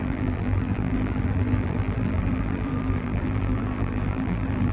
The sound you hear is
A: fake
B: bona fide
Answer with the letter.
A